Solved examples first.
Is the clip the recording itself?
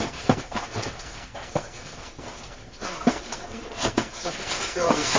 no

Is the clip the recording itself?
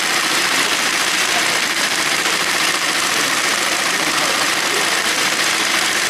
no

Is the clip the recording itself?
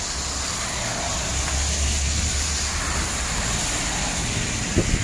yes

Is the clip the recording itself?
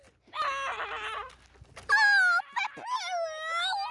yes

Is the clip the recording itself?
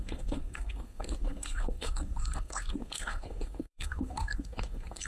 no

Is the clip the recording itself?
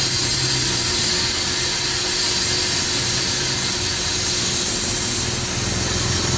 yes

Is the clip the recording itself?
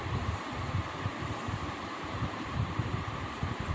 no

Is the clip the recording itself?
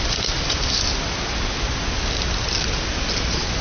yes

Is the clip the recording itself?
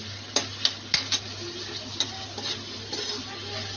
yes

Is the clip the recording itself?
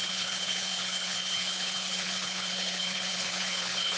no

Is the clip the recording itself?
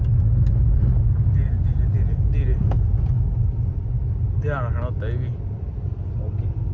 yes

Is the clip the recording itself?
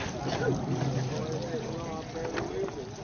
yes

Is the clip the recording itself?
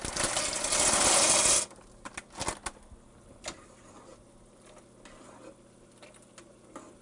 yes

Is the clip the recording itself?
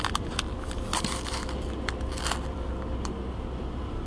yes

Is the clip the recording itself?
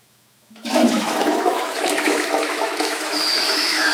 no